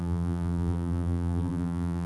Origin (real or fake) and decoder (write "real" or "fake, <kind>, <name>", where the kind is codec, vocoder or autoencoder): fake, vocoder, BigVGAN v2